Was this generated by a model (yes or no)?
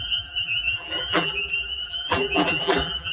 yes